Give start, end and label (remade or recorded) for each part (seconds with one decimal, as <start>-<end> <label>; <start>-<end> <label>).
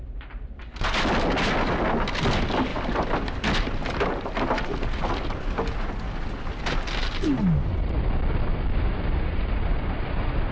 0.0-2.7 recorded; 2.7-5.4 remade; 5.4-10.5 recorded